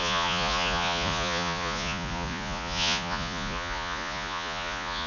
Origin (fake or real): fake